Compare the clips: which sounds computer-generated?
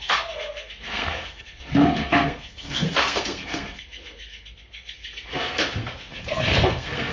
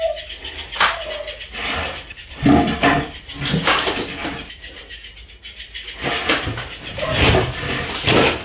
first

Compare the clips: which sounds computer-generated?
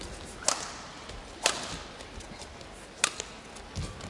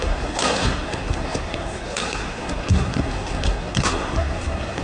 second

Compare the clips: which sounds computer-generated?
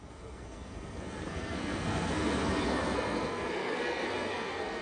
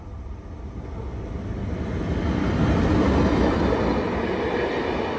first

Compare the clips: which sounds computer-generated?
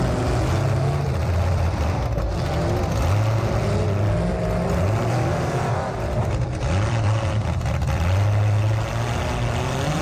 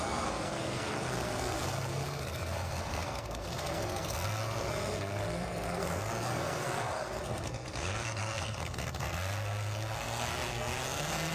second